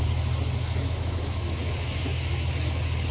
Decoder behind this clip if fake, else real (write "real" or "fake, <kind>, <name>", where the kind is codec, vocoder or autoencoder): real